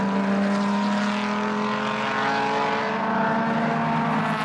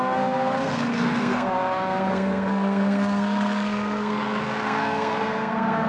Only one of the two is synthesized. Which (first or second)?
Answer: second